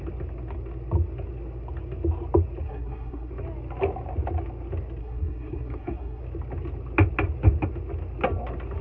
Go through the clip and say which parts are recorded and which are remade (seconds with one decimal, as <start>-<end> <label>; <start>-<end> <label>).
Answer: 0.0-2.6 recorded; 2.6-3.3 remade; 3.3-5.0 recorded; 5.0-6.2 remade; 6.2-8.8 recorded